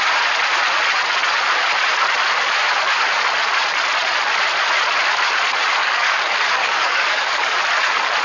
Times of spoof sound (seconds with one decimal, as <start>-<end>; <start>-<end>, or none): 5.8-7.6